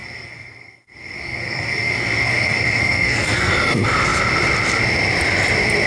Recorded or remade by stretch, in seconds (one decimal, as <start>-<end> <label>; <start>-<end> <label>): 0.0-3.5 remade; 3.5-5.9 recorded